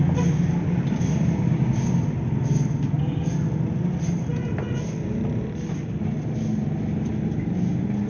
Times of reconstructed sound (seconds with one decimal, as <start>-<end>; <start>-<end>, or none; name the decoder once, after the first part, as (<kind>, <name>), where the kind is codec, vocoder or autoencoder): none